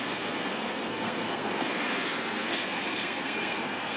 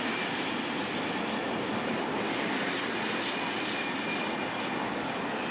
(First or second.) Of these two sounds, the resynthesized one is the first